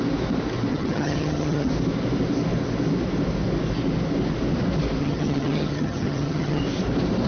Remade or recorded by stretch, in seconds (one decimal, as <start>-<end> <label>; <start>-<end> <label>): 0.0-0.7 recorded; 0.7-1.7 remade; 1.7-5.0 recorded; 5.0-6.6 remade; 6.6-7.3 recorded